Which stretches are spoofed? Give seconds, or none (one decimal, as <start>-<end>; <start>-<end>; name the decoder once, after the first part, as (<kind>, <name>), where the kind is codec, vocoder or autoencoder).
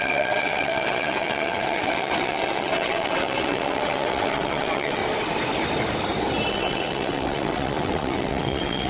0.0-5.0 (vocoder, WaveNeXt); 6.5-8.9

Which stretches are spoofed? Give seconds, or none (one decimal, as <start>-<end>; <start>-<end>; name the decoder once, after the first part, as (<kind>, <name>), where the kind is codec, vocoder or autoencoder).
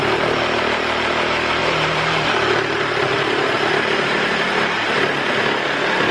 1.6-5.3 (vocoder, BigVGAN v2)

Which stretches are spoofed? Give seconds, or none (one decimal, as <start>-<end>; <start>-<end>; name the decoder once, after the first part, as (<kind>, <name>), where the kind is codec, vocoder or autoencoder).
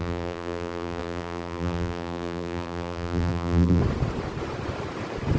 0.0-3.8 (vocoder, BigVGAN v2)